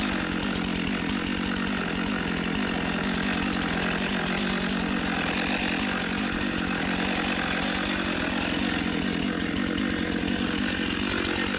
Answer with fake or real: real